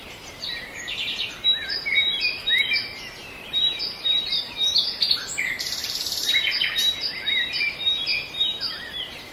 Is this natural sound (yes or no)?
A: no